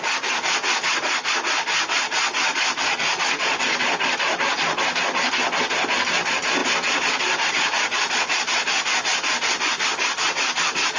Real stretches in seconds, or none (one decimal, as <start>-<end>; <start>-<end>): 0.0-11.0